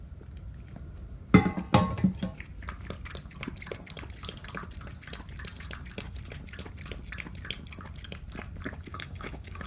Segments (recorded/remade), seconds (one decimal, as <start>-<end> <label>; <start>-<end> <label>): 0.0-8.9 recorded; 8.9-9.7 remade